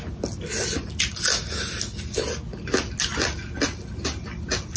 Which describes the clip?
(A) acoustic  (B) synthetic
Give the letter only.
A